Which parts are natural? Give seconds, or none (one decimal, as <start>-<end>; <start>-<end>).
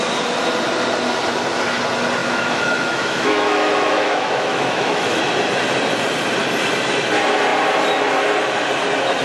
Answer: 0.0-2.2; 5.2-9.2